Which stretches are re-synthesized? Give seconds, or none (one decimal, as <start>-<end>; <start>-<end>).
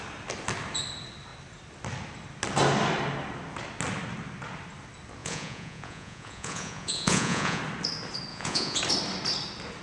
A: 5.2-7.6; 8.3-8.8